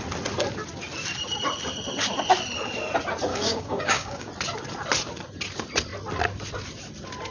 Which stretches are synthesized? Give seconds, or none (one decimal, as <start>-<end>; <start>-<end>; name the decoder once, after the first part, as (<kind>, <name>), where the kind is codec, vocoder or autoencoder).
3.3-4.3 (codec, DAC)